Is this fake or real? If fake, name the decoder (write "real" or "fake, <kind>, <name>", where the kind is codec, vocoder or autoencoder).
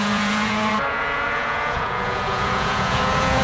fake, vocoder, Vocos